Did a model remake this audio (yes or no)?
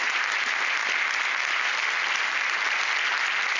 no